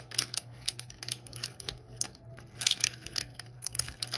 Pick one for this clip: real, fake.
fake